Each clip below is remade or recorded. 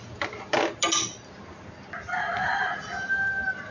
recorded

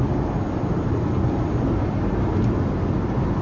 recorded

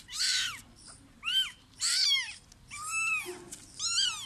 recorded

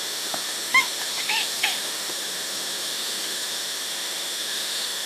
remade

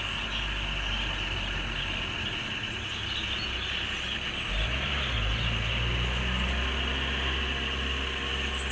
recorded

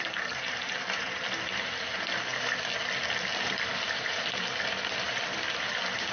recorded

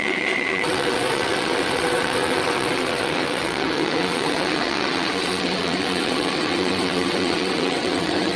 remade